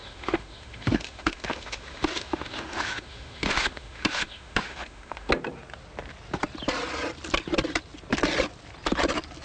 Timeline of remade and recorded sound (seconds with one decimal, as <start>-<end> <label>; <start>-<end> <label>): 0.0-5.3 remade; 5.3-9.4 recorded